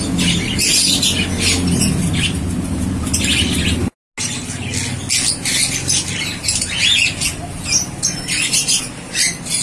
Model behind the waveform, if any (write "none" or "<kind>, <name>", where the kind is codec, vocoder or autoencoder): none